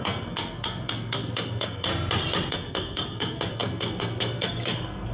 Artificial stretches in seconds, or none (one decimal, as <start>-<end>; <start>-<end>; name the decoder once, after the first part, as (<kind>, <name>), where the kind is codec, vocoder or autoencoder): 0.0-1.9 (codec, SNAC); 2.5-5.1

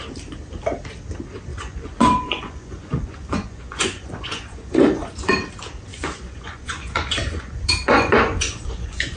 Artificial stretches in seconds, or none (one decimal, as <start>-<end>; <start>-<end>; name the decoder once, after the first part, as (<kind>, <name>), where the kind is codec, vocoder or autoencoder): 1.5-5.3 (vocoder, Vocos); 5.9-9.2

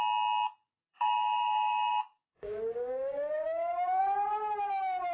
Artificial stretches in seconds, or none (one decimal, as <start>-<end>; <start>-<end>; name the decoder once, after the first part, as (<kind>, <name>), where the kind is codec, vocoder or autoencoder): 0.9-4.0 (codec, DAC)